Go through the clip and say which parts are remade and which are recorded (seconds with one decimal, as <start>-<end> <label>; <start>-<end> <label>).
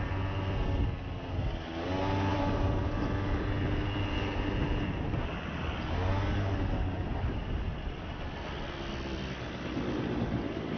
0.0-2.3 recorded; 2.3-3.0 remade; 3.0-10.8 recorded